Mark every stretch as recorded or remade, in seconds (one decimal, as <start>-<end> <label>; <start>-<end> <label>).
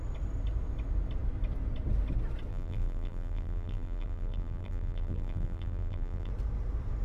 0.0-2.5 recorded; 2.5-6.3 remade; 6.3-7.0 recorded